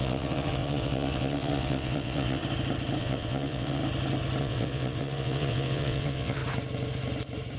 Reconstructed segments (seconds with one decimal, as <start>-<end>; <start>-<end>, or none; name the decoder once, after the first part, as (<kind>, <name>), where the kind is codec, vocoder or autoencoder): 0.0-2.4 (vocoder, WaveNeXt); 3.0-3.8; 4.4-6.4